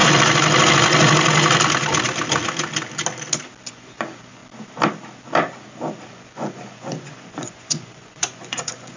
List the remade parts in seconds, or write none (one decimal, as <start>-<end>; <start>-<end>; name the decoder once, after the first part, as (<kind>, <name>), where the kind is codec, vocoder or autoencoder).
3.7-4.4 (vocoder, Vocos); 6.1-9.0